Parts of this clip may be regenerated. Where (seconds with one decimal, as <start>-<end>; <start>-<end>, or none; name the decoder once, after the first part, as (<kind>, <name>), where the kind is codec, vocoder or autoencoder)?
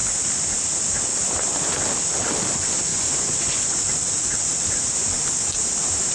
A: 2.9-3.8 (vocoder, Vocos)